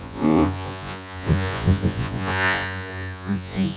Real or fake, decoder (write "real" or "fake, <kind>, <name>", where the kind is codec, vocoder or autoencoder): fake, vocoder, Vocos